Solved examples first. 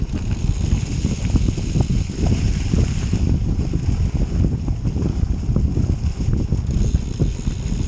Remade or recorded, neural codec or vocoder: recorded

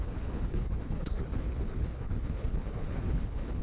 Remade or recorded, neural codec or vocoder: remade, codec, HILCodec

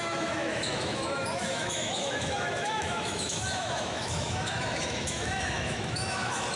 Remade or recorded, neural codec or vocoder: remade, autoencoder, DAC-VAE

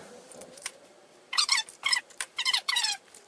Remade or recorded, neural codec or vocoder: remade, vocoder, BigVGAN v2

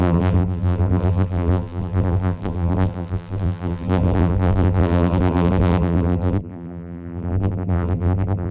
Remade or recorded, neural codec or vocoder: remade, vocoder, BigVGAN v2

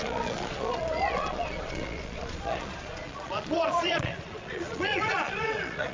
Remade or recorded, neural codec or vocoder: remade, vocoder, Vocos